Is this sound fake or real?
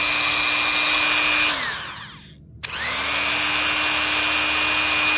real